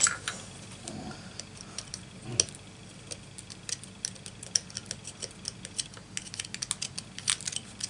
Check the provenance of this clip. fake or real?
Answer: real